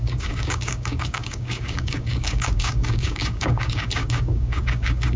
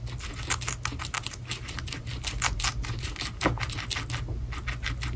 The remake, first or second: first